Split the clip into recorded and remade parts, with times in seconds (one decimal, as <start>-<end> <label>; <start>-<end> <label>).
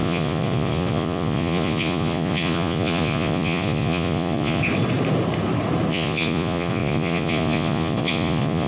0.0-4.6 remade; 4.6-5.9 recorded; 5.9-8.7 remade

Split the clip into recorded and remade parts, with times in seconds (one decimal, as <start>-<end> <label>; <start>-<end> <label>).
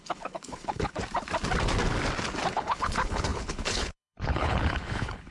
0.0-1.0 remade; 1.0-2.5 recorded; 2.5-5.3 remade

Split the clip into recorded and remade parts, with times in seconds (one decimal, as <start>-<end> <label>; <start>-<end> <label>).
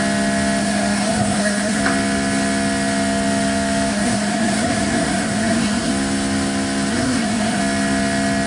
0.0-0.6 recorded; 0.6-1.8 remade; 1.8-3.9 recorded; 3.9-5.9 remade; 5.9-6.9 recorded; 6.9-7.6 remade; 7.6-8.5 recorded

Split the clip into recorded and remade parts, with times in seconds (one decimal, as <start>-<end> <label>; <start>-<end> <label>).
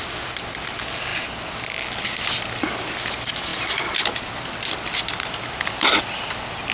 0.0-3.5 recorded; 3.5-5.9 remade; 5.9-6.7 recorded